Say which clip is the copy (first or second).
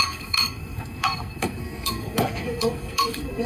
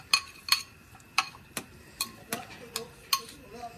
first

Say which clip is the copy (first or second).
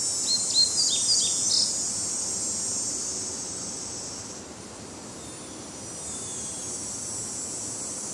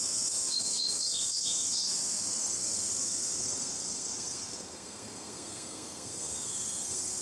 second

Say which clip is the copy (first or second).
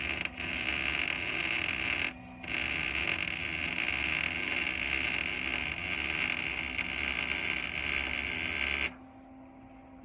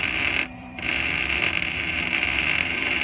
second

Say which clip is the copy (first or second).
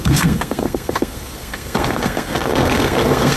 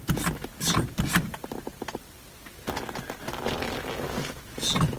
first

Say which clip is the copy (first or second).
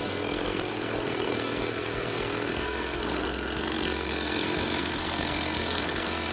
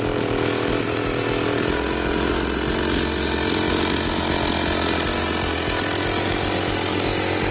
first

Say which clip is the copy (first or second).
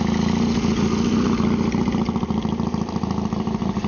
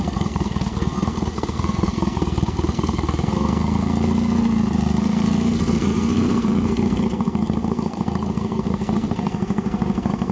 second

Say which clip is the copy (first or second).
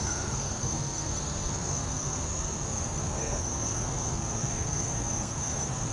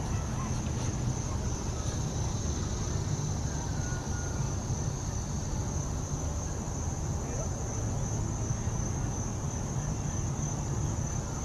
first